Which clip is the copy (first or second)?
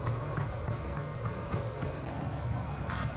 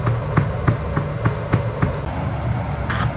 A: first